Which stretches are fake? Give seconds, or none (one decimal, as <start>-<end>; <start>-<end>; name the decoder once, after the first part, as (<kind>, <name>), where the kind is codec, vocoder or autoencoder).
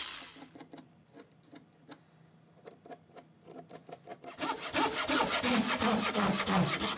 none